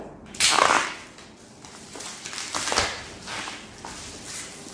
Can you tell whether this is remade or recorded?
recorded